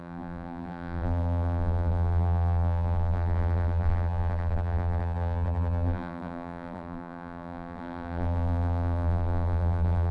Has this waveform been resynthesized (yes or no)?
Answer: yes